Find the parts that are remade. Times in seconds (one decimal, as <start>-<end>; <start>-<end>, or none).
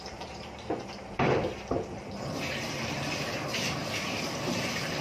0.0-3.8; 4.3-5.0